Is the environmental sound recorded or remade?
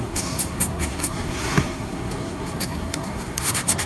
remade